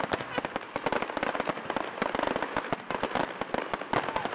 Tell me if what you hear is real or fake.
real